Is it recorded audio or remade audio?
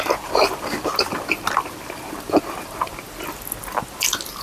recorded